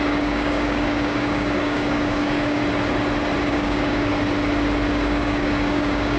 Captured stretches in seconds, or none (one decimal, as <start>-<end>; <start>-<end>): 2.6-3.5; 4.1-4.9